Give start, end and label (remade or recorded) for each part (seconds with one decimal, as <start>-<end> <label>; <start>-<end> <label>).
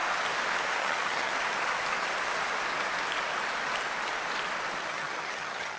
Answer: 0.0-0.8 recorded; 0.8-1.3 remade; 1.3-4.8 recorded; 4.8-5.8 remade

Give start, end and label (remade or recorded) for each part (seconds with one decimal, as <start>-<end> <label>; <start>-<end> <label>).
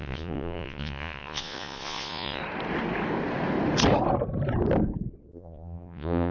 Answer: 0.0-2.4 remade; 2.4-5.3 recorded; 5.3-6.3 remade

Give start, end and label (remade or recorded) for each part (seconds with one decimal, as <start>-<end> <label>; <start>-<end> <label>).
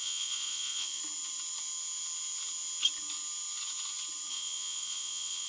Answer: 0.0-1.0 remade; 1.0-4.3 recorded; 4.3-5.5 remade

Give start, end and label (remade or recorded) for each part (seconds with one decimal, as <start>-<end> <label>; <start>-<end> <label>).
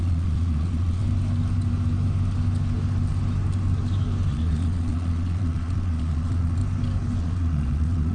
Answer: 0.0-1.0 remade; 1.0-4.3 recorded; 4.3-6.6 remade; 6.6-7.2 recorded; 7.2-8.1 remade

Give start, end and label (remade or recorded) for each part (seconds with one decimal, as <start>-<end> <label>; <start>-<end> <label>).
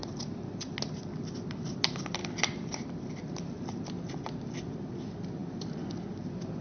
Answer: 0.0-0.7 remade; 0.7-5.4 recorded; 5.4-5.9 remade; 5.9-6.6 recorded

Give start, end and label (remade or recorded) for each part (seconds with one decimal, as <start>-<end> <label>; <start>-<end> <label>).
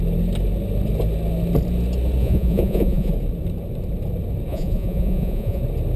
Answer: 0.0-2.2 recorded; 2.2-3.1 remade; 3.1-4.5 recorded; 4.5-5.6 remade; 5.6-6.0 recorded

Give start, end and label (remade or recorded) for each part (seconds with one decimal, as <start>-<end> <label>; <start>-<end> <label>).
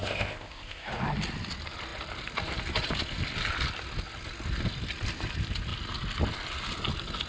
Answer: 0.0-0.9 remade; 0.9-7.3 recorded